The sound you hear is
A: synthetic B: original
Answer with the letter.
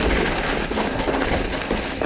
B